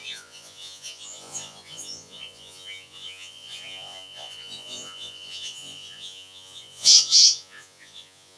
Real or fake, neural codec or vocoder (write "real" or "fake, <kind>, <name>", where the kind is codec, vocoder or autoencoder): fake, vocoder, Vocos